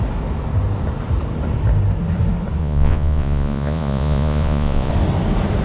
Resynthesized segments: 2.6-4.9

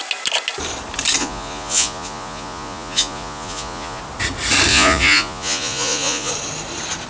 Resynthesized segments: 1.2-4.0; 4.7-6.3